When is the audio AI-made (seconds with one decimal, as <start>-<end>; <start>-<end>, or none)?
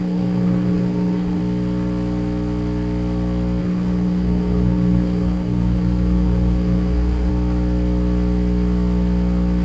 0.0-1.4; 3.6-7.3